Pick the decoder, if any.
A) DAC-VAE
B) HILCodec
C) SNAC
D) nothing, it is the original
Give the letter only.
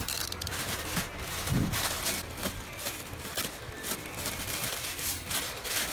D